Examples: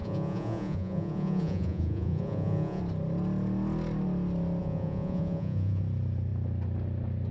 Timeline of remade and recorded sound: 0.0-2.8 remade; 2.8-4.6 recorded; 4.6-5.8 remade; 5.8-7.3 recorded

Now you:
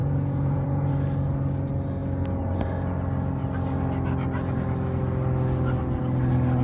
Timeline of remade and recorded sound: 0.0-0.9 remade; 0.9-6.6 recorded

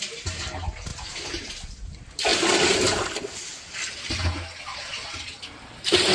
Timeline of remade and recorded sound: 0.0-4.7 recorded; 4.7-5.4 remade; 5.4-6.1 recorded